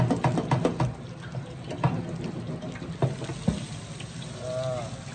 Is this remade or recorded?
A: recorded